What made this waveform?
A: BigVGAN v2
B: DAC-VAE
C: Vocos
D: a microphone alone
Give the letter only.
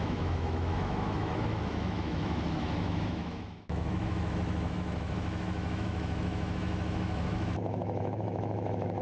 B